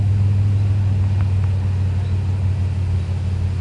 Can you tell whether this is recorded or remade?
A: recorded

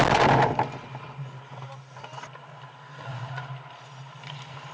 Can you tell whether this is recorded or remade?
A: recorded